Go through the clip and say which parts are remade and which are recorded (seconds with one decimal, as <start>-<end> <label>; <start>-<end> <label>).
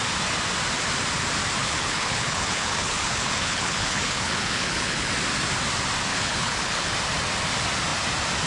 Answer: 0.0-1.6 recorded; 1.6-5.1 remade; 5.1-6.1 recorded; 6.1-6.9 remade; 6.9-8.5 recorded